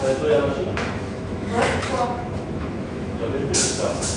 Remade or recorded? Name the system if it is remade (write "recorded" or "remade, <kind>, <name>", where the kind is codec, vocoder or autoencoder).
remade, autoencoder, DAC-VAE